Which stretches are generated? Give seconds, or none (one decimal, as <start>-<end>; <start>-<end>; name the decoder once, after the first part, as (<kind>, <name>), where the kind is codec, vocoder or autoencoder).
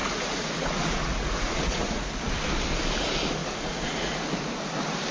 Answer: 0.0-2.1 (vocoder, Vocos); 3.4-4.1